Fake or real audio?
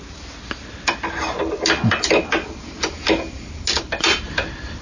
real